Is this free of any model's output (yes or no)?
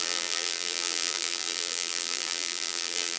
no